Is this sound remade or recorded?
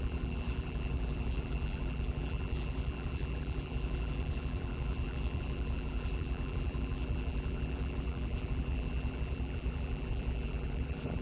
remade